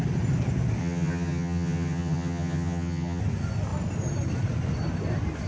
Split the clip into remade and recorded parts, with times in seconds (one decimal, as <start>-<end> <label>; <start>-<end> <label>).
0.0-0.8 recorded; 0.8-3.2 remade; 3.2-5.5 recorded